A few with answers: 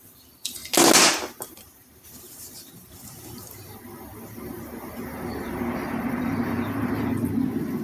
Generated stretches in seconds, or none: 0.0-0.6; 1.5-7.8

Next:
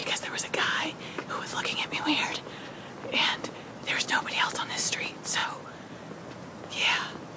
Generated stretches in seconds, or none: 0.0-0.5; 5.4-5.9

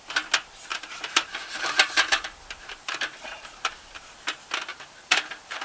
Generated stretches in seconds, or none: 0.7-4.1; 4.7-5.6

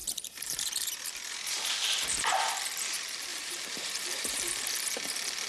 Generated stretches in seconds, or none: 0.0-0.9; 3.3-4.5

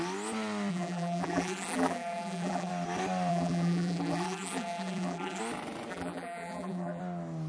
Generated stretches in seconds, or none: 0.7-2.7; 3.3-5.4; 5.9-7.0

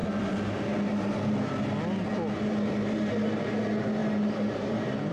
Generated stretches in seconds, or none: 4.0-5.1